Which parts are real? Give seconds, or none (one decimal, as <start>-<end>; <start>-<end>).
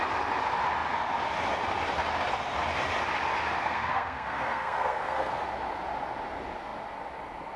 0.0-3.6; 5.3-7.6